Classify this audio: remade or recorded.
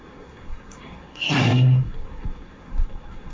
remade